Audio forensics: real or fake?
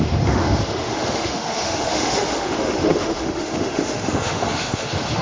fake